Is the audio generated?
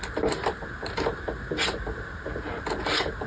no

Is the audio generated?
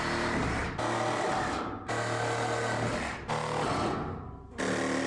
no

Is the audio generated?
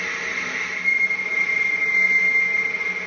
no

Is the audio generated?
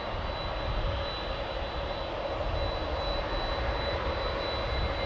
no